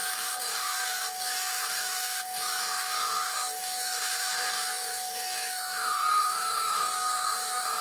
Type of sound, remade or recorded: remade